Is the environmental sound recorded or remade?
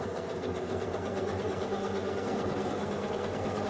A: remade